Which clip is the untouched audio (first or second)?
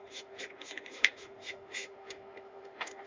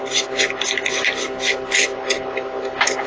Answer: second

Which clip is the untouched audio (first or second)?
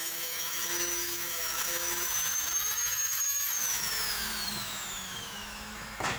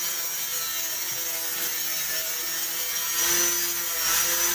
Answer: second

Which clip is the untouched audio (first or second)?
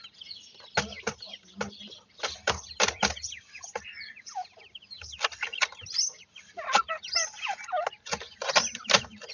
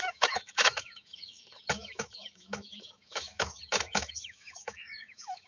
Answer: first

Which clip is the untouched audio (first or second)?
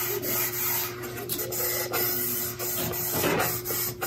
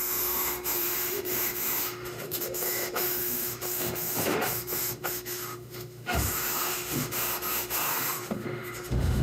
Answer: first